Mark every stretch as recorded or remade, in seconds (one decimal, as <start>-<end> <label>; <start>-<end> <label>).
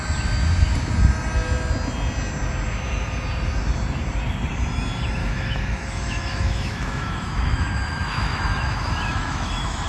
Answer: 0.0-5.2 recorded; 5.2-9.9 remade